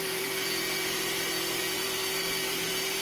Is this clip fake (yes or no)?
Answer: yes